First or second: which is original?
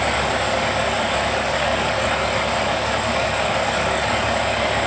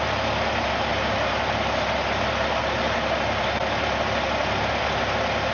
second